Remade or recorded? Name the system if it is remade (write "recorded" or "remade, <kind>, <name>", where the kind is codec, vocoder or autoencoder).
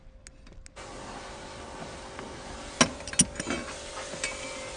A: recorded